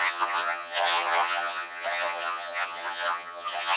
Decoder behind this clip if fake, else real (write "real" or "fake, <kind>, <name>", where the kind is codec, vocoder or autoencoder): fake, vocoder, HiFi-GAN